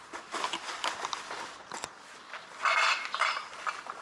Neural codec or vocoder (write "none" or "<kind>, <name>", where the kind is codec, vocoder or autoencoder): none